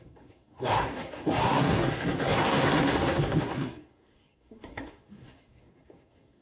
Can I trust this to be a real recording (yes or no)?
no